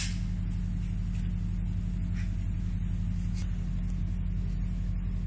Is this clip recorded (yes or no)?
yes